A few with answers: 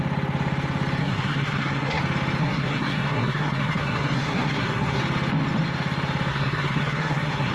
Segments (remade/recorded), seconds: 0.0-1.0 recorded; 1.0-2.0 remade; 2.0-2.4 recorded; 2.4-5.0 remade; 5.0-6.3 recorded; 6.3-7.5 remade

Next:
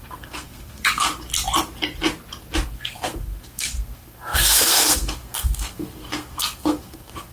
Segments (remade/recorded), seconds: 0.0-1.1 remade; 1.1-2.7 recorded; 2.7-7.3 remade

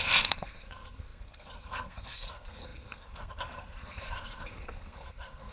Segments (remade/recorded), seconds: 0.0-5.5 remade

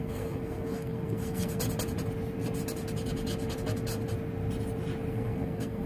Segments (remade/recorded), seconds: 0.0-1.6 remade; 1.6-5.1 recorded; 5.1-5.9 remade

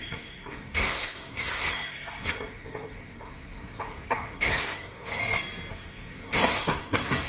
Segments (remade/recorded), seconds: 0.0-5.2 remade; 5.2-5.7 recorded; 5.7-7.3 remade

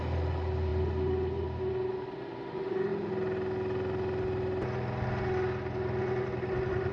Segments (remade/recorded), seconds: 0.0-6.9 recorded

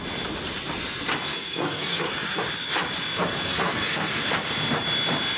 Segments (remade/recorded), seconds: 0.0-1.3 recorded; 1.3-2.0 remade; 2.0-3.5 recorded; 3.5-4.2 remade; 4.2-5.4 recorded